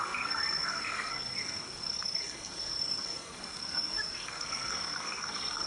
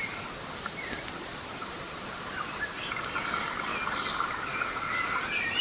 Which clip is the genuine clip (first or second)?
second